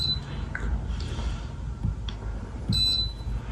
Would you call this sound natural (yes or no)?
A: yes